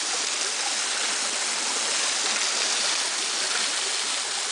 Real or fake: real